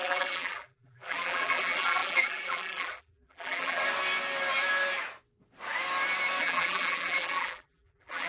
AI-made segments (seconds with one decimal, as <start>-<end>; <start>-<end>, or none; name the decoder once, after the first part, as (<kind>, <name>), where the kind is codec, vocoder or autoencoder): 0.0-3.8 (vocoder, BigVGAN v2); 6.4-8.3